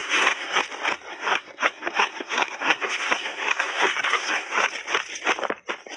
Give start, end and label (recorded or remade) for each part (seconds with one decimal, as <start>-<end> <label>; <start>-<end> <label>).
0.0-0.6 remade; 0.6-1.1 recorded; 1.1-4.7 remade; 4.7-6.0 recorded